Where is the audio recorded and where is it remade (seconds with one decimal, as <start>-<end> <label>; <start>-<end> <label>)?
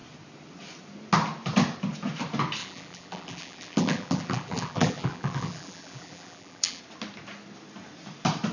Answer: 0.0-2.6 recorded; 2.6-6.8 remade; 6.8-8.5 recorded